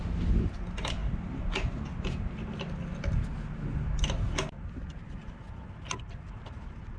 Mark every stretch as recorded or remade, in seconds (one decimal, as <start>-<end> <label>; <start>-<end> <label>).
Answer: 0.0-7.0 recorded